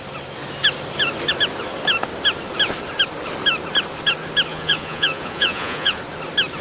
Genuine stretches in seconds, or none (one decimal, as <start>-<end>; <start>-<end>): 0.0-4.5; 6.0-6.6